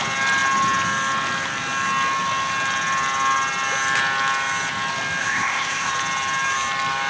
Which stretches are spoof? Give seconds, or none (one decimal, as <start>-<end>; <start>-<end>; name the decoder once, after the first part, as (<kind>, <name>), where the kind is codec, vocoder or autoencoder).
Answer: 5.2-5.9 (codec, ZipCodec)